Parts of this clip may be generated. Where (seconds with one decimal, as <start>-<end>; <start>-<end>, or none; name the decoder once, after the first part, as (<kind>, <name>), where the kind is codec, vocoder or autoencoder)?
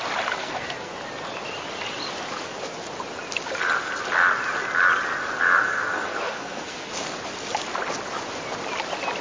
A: 0.4-0.9 (codec, SNAC); 5.7-6.9